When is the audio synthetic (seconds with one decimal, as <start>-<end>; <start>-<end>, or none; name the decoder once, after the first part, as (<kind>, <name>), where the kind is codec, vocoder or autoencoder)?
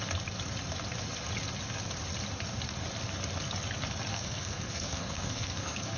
4.1-6.0 (codec, SNAC)